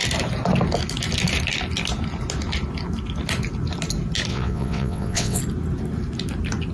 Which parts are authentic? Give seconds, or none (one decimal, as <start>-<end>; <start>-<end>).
0.0-4.3; 5.4-6.7